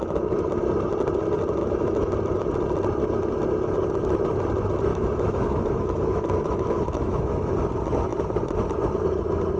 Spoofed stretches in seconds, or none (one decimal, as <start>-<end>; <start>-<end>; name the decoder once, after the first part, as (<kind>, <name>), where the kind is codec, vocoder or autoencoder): 1.6-2.1 (autoencoder, DAC-VAE); 4.9-7.5